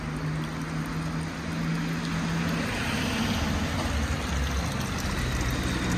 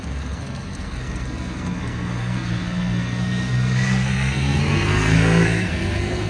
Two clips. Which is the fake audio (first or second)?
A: second